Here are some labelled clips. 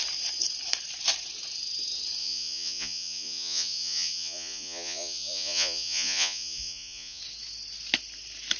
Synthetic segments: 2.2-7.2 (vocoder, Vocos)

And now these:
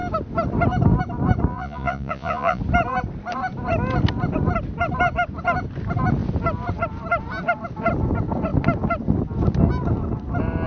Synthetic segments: 1.5-2.6 (vocoder, Vocos)

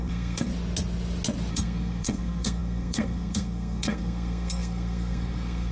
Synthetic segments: 0.0-0.5 (codec, SNAC); 1.5-5.7

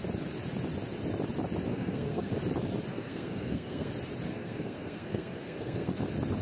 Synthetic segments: 1.7-2.3 (codec, SNAC); 2.9-3.9; 4.3-5.9

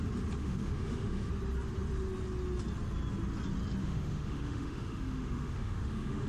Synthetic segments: 0.4-1.3 (autoencoder, DAC-VAE); 3.8-6.3